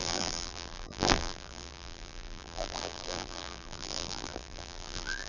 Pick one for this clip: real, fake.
fake